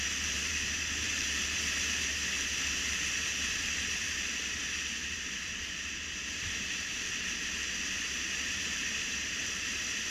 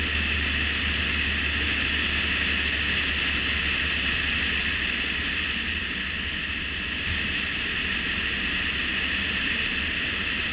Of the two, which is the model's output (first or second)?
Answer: first